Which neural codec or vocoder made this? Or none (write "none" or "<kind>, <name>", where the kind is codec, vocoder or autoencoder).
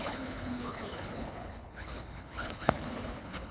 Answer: codec, HILCodec